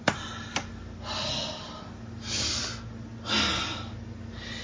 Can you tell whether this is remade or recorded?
recorded